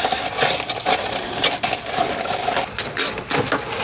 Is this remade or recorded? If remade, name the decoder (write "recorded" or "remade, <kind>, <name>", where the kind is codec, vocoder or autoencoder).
recorded